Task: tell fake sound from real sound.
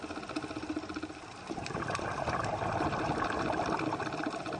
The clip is fake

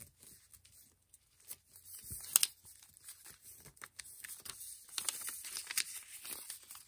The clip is real